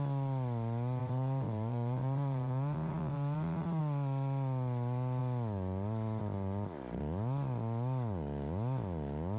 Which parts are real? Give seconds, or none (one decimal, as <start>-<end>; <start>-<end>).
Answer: 0.0-1.0; 3.8-9.4